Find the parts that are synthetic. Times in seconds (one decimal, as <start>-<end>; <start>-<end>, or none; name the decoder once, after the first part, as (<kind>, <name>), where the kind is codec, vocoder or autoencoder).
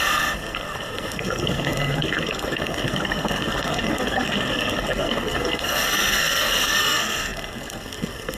0.0-8.4 (codec, SNAC)